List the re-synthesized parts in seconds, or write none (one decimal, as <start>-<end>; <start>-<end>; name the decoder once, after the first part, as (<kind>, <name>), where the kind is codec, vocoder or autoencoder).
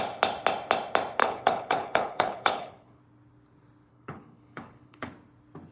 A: 1.2-3.0 (codec, HILCodec); 3.9-5.1